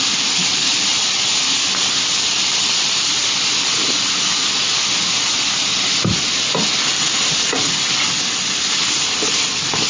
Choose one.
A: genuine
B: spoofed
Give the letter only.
A